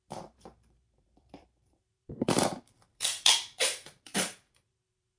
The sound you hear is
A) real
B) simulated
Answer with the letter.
B